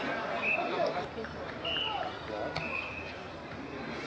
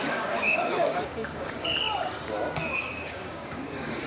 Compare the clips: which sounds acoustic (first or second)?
first